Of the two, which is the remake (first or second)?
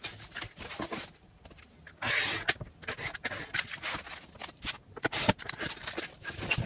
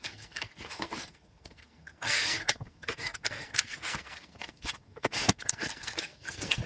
second